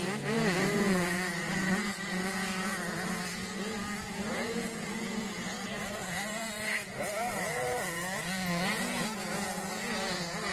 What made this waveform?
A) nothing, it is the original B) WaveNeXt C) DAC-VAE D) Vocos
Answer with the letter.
D